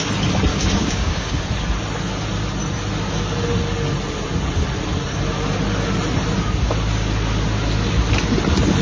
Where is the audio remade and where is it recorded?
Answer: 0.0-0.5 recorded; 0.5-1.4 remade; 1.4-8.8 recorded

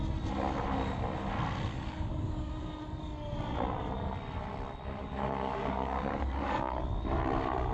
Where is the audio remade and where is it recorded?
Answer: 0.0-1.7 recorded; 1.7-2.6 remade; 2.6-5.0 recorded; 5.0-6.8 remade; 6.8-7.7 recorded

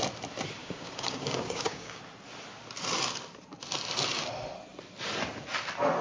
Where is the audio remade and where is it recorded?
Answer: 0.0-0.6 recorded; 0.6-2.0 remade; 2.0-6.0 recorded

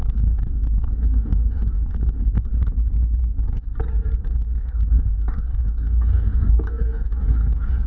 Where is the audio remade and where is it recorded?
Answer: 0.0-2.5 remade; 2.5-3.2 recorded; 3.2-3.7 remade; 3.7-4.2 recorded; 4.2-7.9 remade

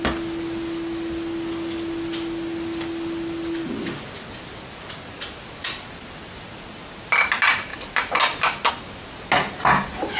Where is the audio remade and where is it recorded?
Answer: 0.0-10.2 recorded

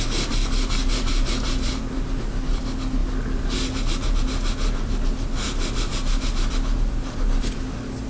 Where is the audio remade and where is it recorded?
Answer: 0.0-8.1 recorded

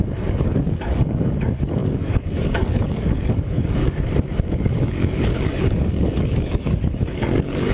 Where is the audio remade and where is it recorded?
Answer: 0.0-3.8 remade; 3.8-4.5 recorded; 4.5-7.7 remade